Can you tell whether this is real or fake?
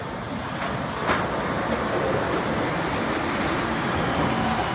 real